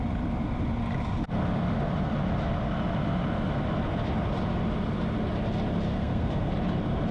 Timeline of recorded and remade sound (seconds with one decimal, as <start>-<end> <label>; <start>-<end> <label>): 0.0-5.9 recorded; 5.9-6.5 remade; 6.5-7.1 recorded

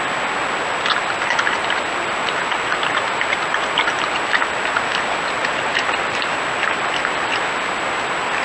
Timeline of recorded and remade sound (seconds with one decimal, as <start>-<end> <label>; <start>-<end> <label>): 0.0-5.4 recorded; 5.4-6.3 remade; 6.3-8.4 recorded

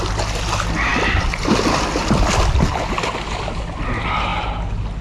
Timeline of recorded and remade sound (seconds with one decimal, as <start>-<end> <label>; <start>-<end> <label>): 0.0-5.0 recorded

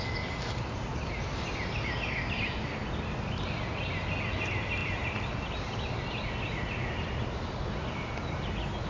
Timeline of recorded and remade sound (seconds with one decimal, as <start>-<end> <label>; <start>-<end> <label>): 0.0-8.9 recorded

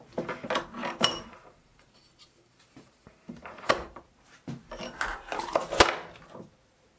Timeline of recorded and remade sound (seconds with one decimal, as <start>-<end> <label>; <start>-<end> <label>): 0.0-0.8 recorded; 0.8-4.0 remade; 4.0-5.1 recorded; 5.1-5.7 remade; 5.7-7.0 recorded

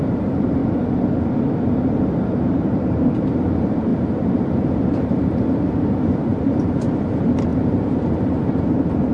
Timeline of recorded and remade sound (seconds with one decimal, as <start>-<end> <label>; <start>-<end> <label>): 0.0-0.6 remade; 0.6-1.8 recorded; 1.8-9.1 remade

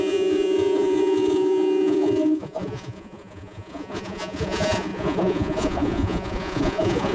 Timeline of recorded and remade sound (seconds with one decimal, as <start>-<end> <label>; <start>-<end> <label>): 0.0-7.1 remade

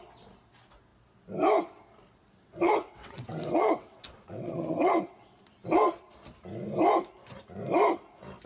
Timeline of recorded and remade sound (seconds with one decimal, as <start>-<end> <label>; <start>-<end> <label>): 0.0-2.4 recorded; 2.4-5.4 remade; 5.4-8.5 recorded